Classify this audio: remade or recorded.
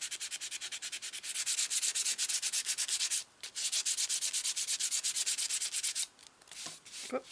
recorded